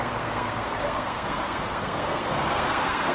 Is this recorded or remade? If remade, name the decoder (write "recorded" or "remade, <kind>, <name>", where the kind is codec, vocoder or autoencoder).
remade, codec, SNAC